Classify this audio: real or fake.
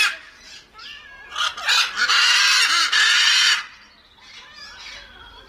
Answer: real